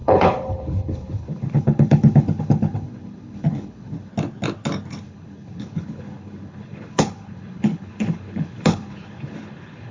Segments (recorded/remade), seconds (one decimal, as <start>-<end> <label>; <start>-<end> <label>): 0.0-4.1 remade; 4.1-5.0 recorded; 5.0-9.9 remade